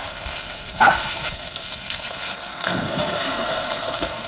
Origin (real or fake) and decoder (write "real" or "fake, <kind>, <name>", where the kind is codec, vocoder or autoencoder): fake, codec, SNAC